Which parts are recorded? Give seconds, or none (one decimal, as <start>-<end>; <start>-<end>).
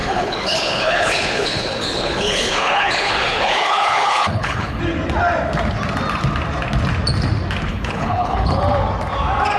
4.8-7.7; 8.6-9.6